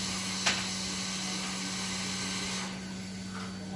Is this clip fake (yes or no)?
no